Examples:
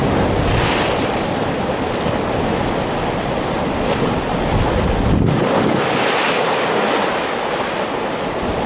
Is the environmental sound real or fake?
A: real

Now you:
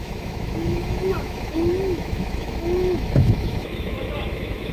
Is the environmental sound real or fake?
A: fake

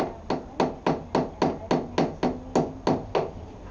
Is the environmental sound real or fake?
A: real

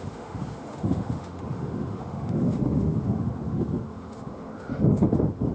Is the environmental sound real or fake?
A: fake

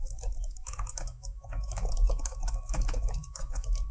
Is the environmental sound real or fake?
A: fake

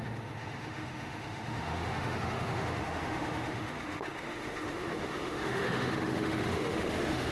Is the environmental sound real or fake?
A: fake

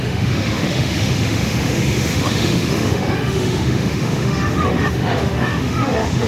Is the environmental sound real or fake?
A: fake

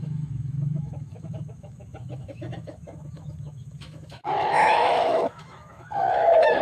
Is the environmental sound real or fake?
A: fake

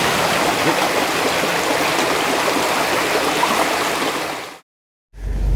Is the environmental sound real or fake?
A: real